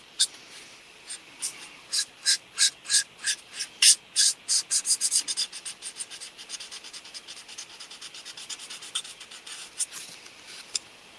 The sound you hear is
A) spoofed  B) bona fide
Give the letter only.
B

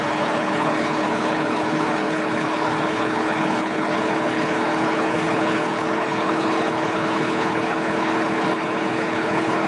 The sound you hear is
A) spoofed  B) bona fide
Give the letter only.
A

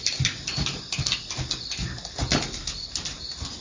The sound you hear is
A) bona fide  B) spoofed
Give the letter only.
A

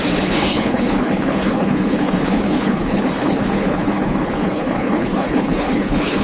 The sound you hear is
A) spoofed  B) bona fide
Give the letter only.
A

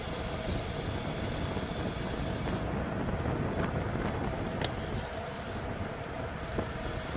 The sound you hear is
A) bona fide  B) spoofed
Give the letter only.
A